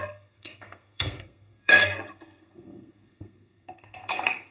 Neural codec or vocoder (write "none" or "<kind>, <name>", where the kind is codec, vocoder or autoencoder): codec, SNAC